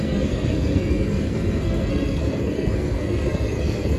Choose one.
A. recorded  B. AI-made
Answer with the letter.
B